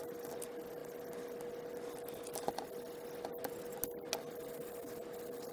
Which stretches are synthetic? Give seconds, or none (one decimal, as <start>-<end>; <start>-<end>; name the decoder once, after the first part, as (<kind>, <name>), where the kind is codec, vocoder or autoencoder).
none